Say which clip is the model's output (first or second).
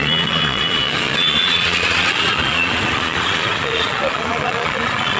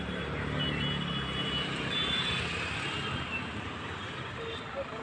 first